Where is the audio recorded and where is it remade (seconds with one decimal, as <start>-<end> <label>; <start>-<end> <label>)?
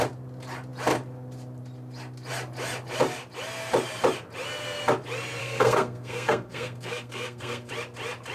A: 0.0-5.4 recorded; 5.4-7.7 remade; 7.7-8.3 recorded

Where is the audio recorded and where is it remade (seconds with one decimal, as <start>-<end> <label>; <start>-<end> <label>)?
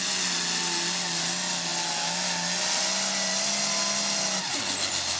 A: 0.0-5.2 recorded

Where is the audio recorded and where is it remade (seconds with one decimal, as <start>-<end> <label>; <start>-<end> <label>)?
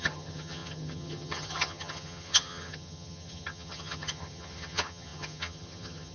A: 0.0-6.1 remade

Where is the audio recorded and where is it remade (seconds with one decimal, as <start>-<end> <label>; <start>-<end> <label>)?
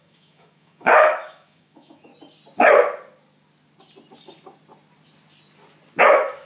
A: 0.0-2.1 remade; 2.1-6.0 recorded; 6.0-6.5 remade